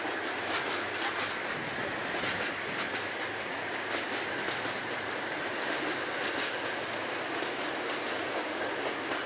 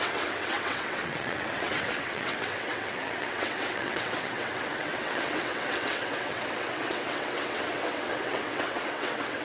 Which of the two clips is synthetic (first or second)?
second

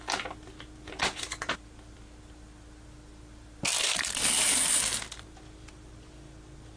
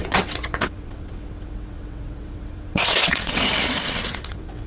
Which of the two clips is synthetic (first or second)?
second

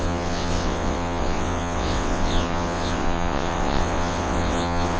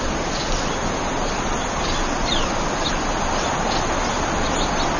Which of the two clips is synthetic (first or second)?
first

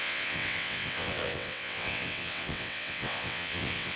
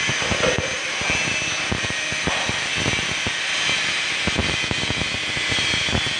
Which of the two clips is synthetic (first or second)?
first